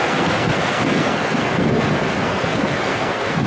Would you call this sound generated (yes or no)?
yes